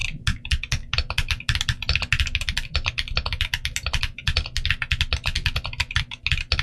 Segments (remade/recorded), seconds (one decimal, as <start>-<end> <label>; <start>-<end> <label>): 0.0-6.6 recorded